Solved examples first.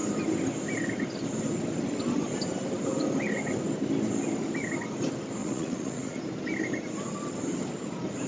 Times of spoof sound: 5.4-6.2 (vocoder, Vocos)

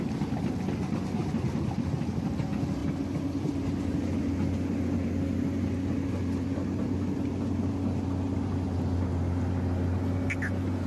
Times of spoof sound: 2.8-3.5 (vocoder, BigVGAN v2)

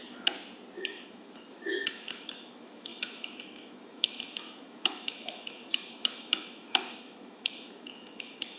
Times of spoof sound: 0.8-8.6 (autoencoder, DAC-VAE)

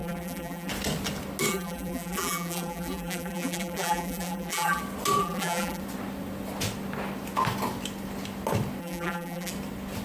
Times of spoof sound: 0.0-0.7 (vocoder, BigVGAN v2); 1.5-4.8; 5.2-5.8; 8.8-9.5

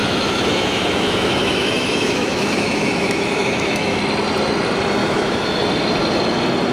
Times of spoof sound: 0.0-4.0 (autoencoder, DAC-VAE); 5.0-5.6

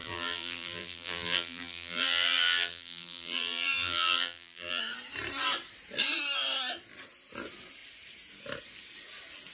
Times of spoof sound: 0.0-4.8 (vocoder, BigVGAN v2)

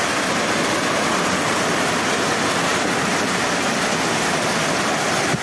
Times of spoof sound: none